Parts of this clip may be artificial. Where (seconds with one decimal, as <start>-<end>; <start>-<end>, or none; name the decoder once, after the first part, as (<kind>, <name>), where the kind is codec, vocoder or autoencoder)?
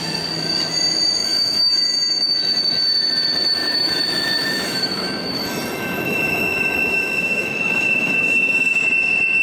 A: 1.2-2.3 (autoencoder, DAC-VAE); 3.6-8.7